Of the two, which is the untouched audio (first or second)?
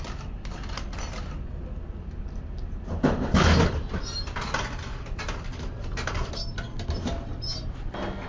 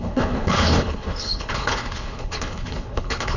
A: first